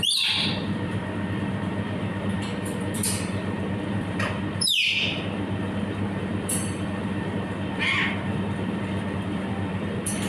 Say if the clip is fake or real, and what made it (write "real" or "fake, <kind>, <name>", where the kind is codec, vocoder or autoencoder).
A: fake, vocoder, BigVGAN v2